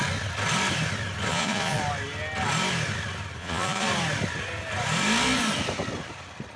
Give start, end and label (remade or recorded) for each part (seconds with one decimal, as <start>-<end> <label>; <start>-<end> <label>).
0.0-1.3 recorded; 1.3-1.8 remade; 1.8-3.4 recorded; 3.4-3.9 remade; 3.9-6.6 recorded